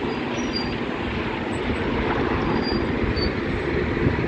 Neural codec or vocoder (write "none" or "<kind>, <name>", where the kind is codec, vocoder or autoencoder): none